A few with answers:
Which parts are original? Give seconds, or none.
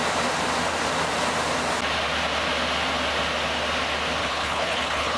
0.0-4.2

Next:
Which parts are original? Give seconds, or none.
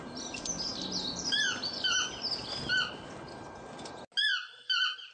0.0-5.1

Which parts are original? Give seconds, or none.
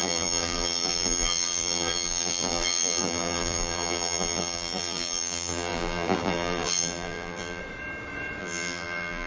7.6-8.4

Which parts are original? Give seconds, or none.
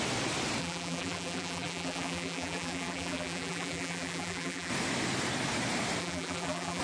0.0-0.6; 4.7-6.0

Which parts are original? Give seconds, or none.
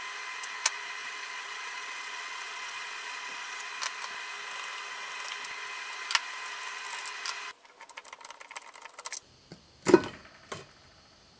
0.0-1.0; 3.6-11.4